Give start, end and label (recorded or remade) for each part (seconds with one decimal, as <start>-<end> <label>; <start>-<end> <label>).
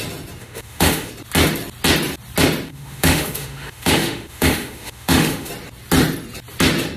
0.0-0.4 recorded; 0.4-1.1 remade; 1.1-2.7 recorded; 2.7-5.5 remade; 5.5-7.0 recorded